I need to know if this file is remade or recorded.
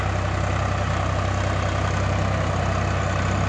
recorded